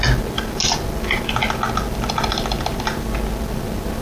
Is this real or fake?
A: real